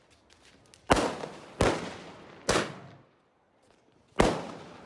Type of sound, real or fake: real